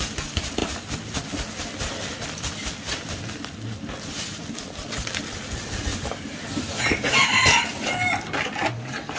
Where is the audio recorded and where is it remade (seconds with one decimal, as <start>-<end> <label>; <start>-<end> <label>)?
0.0-5.9 recorded; 5.9-7.4 remade; 7.4-9.2 recorded